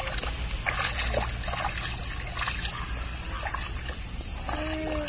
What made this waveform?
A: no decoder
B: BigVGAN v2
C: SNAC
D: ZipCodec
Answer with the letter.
A